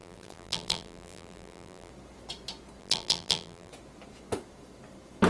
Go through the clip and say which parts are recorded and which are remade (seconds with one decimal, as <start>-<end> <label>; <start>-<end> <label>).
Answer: 0.0-1.9 remade; 1.9-2.8 recorded; 2.8-3.7 remade; 3.7-5.3 recorded